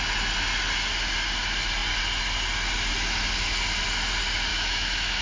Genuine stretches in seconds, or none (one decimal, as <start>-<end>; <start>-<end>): 0.0-4.5